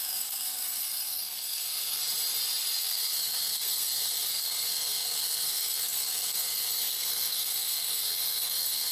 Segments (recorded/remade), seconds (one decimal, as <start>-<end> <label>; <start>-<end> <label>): 0.0-2.0 remade; 2.0-2.8 recorded; 2.8-8.9 remade